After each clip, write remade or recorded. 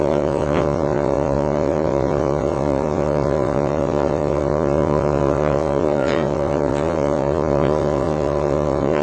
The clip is remade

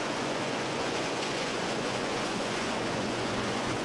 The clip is remade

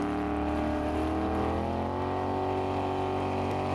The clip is recorded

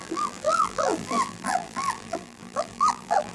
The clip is remade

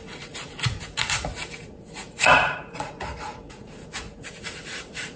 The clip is remade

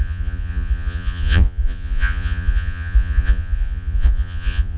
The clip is remade